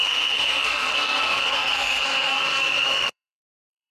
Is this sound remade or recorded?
remade